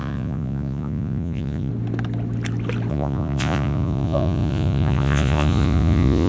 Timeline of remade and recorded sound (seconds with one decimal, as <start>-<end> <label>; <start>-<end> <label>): 0.0-1.7 remade; 1.7-2.9 recorded; 2.9-6.3 remade